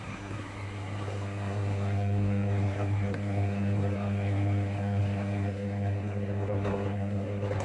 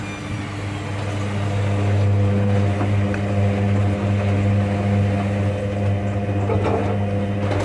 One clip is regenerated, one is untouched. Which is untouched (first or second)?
second